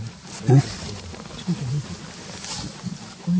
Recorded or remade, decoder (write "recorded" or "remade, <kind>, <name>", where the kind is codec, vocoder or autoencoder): recorded